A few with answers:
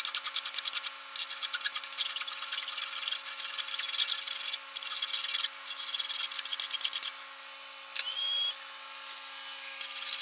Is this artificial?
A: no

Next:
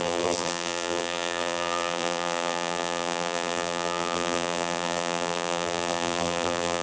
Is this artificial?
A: yes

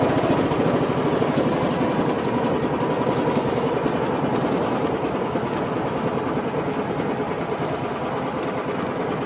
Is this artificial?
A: no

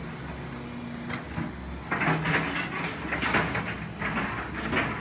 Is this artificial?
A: no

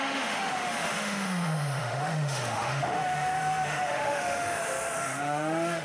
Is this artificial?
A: yes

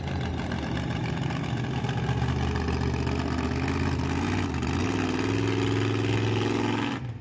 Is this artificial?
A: no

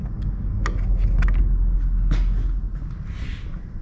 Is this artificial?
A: no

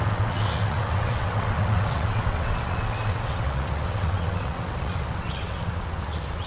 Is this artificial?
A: yes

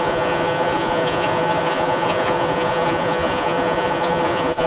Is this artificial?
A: yes